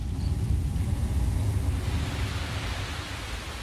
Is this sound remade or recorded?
recorded